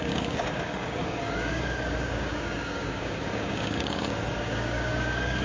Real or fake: fake